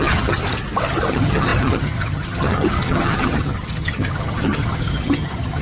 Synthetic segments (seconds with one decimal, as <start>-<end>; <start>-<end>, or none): 0.0-0.4; 1.1-5.6

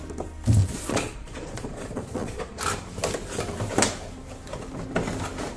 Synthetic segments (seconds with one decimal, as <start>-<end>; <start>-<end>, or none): 0.6-2.6

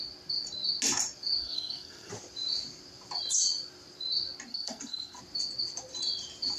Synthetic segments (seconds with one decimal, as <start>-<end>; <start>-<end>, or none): 1.4-2.1; 4.5-5.2

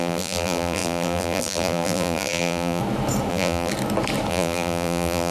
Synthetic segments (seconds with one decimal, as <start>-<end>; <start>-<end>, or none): 0.0-2.8; 3.3-3.7; 4.3-5.3

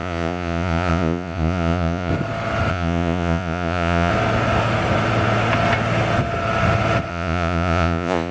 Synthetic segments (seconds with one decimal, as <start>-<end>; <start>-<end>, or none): 0.0-2.1; 2.7-4.1; 7.1-8.3

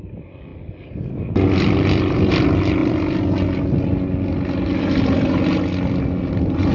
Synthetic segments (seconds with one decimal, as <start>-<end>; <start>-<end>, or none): none